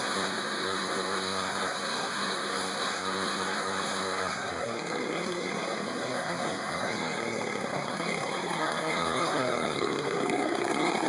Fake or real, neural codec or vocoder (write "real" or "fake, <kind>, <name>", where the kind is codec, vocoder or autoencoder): fake, codec, SNAC